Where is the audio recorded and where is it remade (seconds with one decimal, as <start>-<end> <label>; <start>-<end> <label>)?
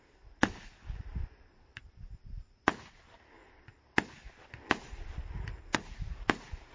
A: 0.0-1.1 recorded; 1.1-1.8 remade; 1.8-5.7 recorded; 5.7-6.7 remade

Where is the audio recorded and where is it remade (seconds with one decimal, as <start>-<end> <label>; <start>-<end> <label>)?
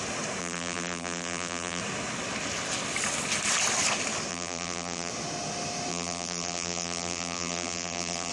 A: 0.0-0.4 recorded; 0.4-1.8 remade; 1.8-4.3 recorded; 4.3-5.1 remade; 5.1-5.9 recorded; 5.9-8.3 remade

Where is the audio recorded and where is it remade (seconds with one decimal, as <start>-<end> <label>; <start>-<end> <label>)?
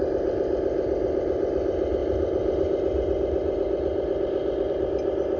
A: 0.0-5.4 recorded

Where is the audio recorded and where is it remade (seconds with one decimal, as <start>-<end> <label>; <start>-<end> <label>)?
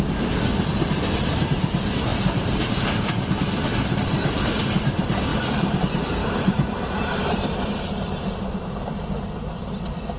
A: 0.0-2.1 recorded; 2.1-3.1 remade; 3.1-6.2 recorded; 6.2-9.0 remade; 9.0-10.2 recorded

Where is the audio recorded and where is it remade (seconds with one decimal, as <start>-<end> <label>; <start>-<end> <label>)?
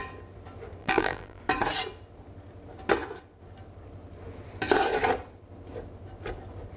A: 0.0-0.8 recorded; 0.8-1.4 remade; 1.4-6.8 recorded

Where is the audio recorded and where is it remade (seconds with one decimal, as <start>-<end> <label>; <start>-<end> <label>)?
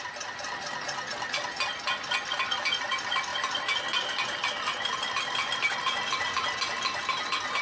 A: 0.0-7.6 recorded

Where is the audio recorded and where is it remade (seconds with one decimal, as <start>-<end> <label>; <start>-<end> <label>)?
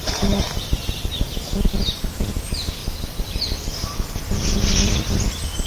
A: 0.0-2.8 recorded; 2.8-5.7 remade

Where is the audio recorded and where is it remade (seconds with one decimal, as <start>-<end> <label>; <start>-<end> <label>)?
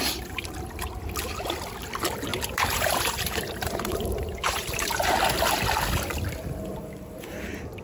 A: 0.0-2.3 recorded; 2.3-5.1 remade; 5.1-7.8 recorded